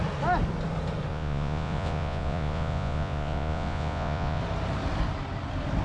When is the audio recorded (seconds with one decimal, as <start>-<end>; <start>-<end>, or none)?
0.0-1.1; 4.4-5.8